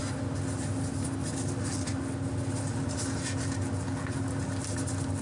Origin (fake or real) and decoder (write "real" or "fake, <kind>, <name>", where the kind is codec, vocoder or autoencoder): real